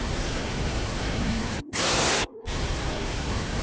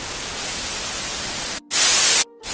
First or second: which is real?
second